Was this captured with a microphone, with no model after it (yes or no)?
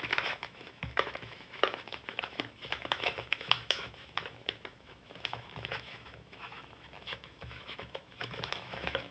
no